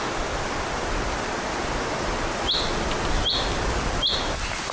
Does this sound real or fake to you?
real